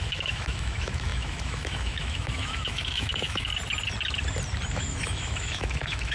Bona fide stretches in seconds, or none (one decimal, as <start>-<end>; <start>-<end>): 3.5-4.7